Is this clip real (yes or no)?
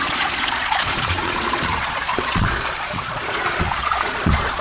no